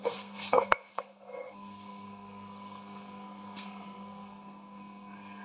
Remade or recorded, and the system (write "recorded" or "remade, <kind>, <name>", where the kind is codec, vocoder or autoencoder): remade, codec, SNAC